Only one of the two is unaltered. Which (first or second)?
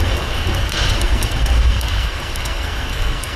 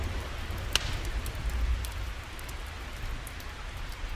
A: second